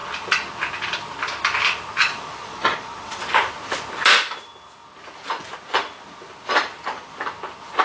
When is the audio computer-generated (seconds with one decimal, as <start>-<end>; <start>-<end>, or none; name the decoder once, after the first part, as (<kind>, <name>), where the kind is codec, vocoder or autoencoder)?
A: 2.4-3.2 (vocoder, Vocos)